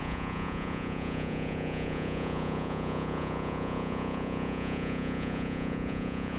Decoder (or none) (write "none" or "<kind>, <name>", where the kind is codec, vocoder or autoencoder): vocoder, Vocos